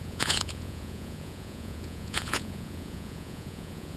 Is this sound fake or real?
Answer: fake